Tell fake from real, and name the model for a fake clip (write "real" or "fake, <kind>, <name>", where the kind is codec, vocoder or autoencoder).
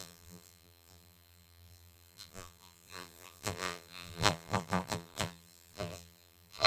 fake, vocoder, BigVGAN v2